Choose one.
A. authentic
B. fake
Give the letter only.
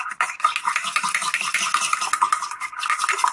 A